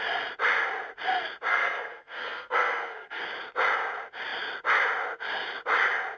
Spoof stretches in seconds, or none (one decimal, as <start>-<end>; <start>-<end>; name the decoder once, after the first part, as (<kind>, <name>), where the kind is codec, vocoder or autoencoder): 1.5-3.2 (codec, SNAC)

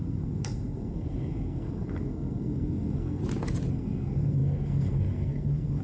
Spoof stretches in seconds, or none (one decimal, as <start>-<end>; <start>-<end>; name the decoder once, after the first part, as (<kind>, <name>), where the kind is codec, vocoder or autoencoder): 0.0-3.2 (codec, SNAC); 3.7-5.8

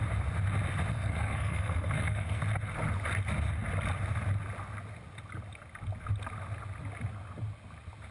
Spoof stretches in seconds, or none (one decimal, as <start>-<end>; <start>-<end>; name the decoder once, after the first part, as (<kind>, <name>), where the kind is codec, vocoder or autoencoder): 0.9-2.4 (codec, SNAC)

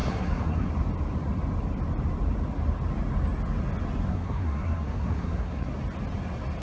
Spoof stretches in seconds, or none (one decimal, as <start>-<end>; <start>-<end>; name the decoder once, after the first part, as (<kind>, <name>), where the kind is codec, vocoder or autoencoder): 0.0-0.7 (codec, SNAC); 4.1-5.7

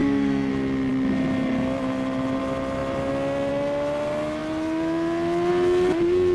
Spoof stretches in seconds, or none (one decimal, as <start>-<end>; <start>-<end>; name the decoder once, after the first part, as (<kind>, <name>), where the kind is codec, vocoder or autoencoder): 0.0-0.5 (codec, SNAC)

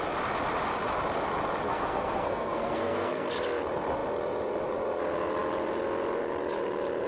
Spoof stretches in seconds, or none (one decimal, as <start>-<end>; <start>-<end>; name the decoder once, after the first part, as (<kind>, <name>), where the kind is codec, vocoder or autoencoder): 1.7-3.3 (codec, SNAC)